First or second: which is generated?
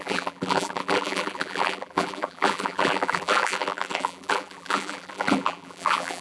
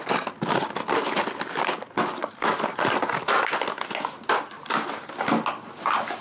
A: first